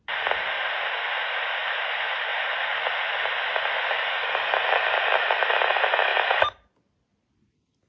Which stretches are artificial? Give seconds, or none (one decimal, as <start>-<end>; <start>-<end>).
0.0-7.9